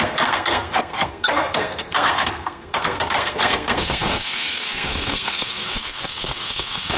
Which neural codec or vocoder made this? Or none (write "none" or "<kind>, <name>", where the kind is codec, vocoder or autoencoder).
codec, SNAC